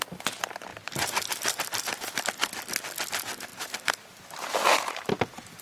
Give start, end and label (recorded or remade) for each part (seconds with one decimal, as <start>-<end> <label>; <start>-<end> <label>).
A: 0.0-0.7 recorded; 0.7-2.2 remade; 2.2-3.5 recorded; 3.5-5.1 remade; 5.1-5.6 recorded